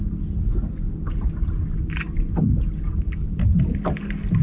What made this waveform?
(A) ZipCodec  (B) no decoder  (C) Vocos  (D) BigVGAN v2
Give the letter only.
B